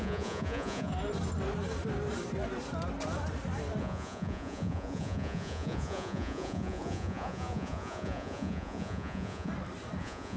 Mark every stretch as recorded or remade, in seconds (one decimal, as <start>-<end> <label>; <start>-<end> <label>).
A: 0.0-0.9 remade; 0.9-3.8 recorded; 3.8-9.5 remade; 9.5-10.0 recorded; 10.0-10.4 remade